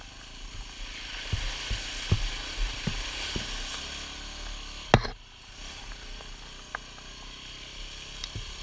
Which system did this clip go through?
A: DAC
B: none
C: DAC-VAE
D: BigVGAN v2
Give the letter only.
B